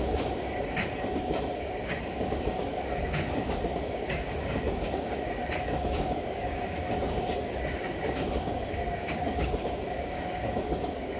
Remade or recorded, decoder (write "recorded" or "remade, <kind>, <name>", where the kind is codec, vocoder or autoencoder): remade, codec, DAC